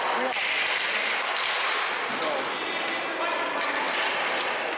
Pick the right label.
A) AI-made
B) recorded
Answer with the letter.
B